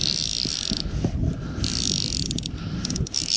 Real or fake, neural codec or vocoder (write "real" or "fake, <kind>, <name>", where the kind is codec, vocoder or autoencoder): real